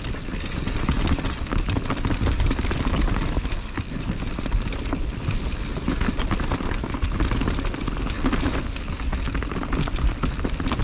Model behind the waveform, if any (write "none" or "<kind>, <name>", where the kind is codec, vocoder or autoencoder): none